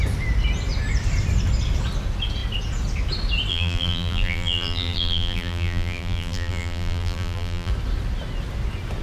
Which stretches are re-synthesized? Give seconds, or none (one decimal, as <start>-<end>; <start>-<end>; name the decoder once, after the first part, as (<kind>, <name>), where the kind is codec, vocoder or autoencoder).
3.5-7.7 (vocoder, BigVGAN v2)